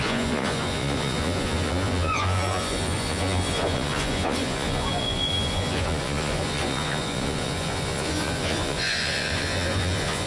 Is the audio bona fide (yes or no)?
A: no